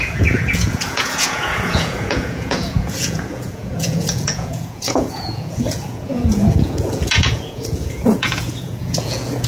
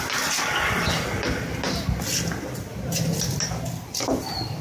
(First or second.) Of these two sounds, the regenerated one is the first